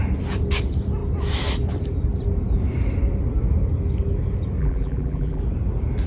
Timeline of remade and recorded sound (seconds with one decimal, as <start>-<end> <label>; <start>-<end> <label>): 0.0-4.6 recorded; 4.6-5.4 remade; 5.4-6.1 recorded